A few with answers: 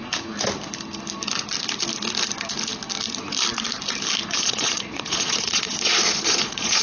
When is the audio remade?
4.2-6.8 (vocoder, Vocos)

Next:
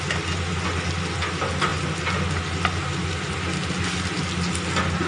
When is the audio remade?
none